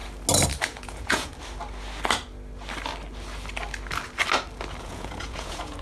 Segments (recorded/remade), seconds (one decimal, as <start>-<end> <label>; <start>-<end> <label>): 0.0-0.6 recorded; 0.6-1.3 remade; 1.3-4.8 recorded; 4.8-5.8 remade